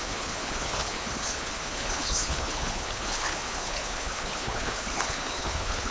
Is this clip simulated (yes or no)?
yes